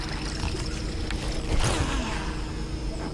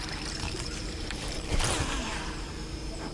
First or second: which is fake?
second